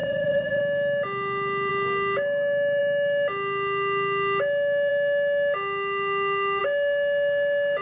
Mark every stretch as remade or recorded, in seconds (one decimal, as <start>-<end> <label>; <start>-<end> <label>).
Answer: 0.0-0.6 remade; 0.6-7.8 recorded